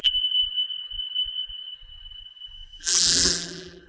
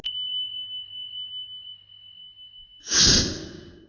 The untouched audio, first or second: second